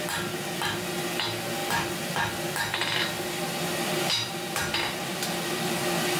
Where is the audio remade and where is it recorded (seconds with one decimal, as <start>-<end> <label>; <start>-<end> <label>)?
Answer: 0.0-1.6 recorded; 1.6-5.3 remade; 5.3-6.2 recorded